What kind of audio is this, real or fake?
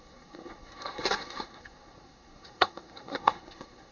fake